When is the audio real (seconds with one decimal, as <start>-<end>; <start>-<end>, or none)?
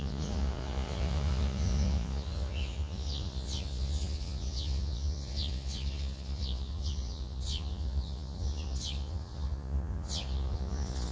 none